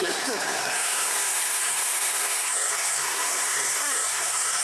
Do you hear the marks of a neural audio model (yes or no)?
yes